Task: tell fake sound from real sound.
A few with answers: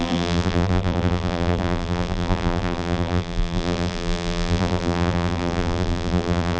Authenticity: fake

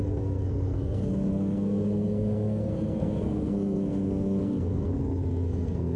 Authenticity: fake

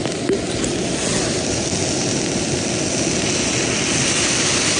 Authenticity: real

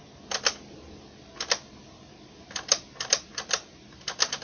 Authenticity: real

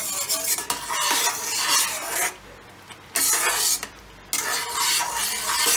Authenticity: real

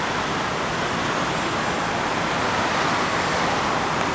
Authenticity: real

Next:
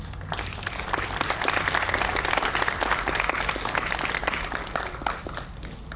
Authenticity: real